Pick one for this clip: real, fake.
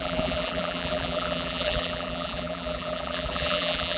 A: fake